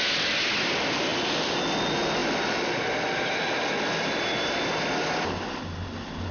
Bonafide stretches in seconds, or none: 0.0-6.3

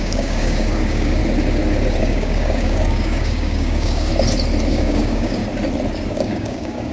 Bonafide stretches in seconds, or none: 1.2-2.0; 4.1-4.7; 5.4-6.1